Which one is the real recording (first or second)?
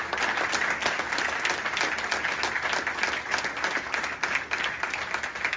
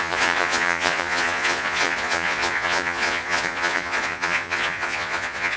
first